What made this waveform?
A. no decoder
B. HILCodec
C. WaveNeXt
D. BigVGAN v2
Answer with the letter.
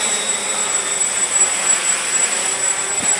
D